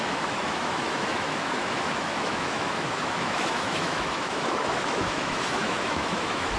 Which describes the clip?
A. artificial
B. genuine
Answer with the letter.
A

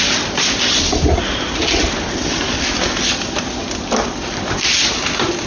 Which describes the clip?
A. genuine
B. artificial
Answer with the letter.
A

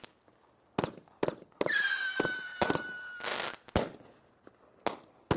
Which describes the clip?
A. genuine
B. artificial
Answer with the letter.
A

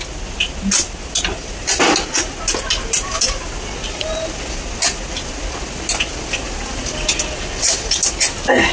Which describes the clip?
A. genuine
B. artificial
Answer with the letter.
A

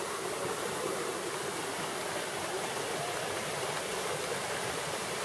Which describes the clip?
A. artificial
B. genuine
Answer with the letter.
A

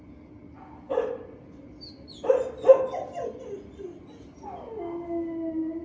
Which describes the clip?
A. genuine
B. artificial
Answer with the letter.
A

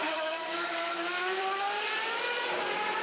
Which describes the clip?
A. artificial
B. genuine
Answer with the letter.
A